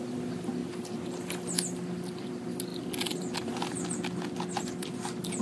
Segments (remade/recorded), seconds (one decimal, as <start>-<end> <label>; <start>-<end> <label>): 0.0-5.4 recorded